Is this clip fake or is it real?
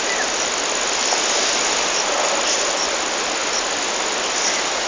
real